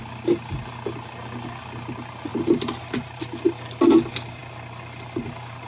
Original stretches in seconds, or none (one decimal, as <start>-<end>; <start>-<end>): 0.0-2.3; 3.2-5.7